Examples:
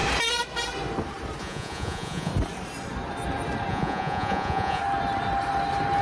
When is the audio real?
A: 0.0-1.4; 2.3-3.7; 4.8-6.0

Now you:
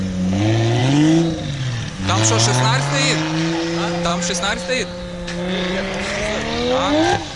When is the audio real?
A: 0.0-4.1; 5.0-5.7; 6.2-7.4

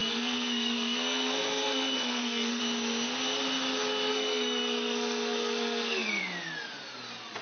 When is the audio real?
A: 2.6-4.1; 6.2-7.4

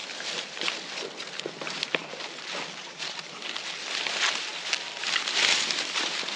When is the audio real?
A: 0.0-6.4